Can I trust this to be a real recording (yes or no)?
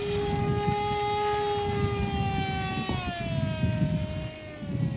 yes